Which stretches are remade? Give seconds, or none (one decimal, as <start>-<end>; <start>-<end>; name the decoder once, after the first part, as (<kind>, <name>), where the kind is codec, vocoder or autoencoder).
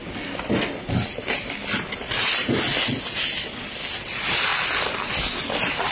none